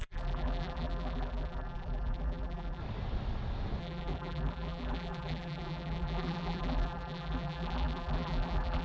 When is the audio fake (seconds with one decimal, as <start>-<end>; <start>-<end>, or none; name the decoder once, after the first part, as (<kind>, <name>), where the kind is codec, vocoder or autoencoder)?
0.0-2.8 (vocoder, BigVGAN v2); 3.8-8.8